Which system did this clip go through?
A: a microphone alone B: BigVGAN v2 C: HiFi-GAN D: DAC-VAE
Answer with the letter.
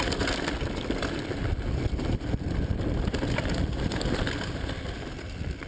B